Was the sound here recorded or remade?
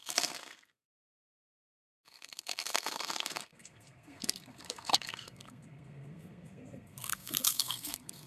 remade